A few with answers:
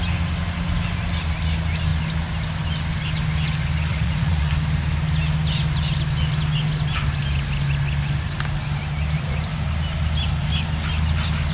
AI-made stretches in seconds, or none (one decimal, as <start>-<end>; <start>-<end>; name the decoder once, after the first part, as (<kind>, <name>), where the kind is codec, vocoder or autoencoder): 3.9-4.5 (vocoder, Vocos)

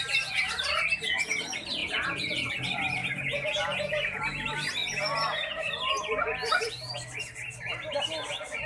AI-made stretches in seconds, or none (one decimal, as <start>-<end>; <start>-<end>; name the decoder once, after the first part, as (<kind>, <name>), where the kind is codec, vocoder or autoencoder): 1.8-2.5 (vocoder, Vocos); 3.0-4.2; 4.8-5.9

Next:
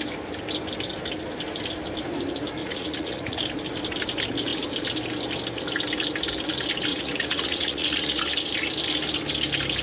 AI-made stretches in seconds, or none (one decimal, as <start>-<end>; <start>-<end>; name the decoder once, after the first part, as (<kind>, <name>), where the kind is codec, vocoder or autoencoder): 2.6-3.4 (vocoder, Vocos); 6.9-8.2